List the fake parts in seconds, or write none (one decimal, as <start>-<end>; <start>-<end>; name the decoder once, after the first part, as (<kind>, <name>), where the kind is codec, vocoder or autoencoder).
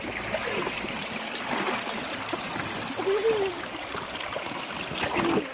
3.5-4.6 (vocoder, BigVGAN v2)